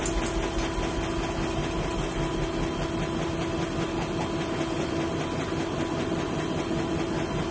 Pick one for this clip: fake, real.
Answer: real